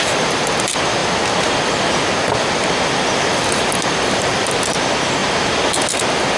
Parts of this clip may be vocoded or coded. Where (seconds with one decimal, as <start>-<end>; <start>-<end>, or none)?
none